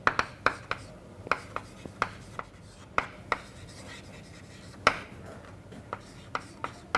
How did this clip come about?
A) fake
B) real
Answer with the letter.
B